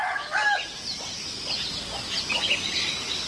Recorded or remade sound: recorded